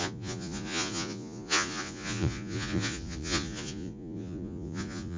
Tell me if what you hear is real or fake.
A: fake